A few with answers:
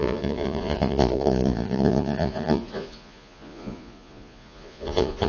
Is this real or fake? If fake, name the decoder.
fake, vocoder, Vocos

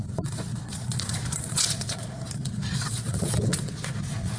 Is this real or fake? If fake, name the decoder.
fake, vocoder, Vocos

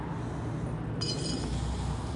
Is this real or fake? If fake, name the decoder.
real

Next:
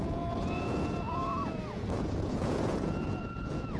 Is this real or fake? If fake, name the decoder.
fake, vocoder, Vocos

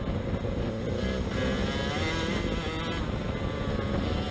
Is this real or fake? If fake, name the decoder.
real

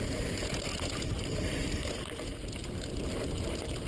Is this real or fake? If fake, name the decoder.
real